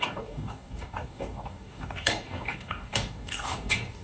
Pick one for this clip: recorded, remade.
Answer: remade